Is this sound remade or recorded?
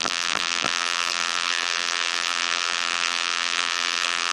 remade